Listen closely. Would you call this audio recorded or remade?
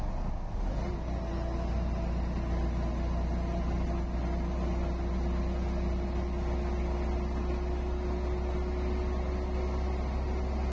recorded